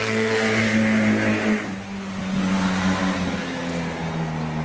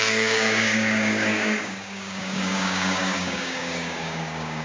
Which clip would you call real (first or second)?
first